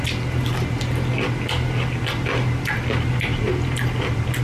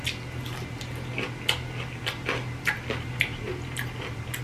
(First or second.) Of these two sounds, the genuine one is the second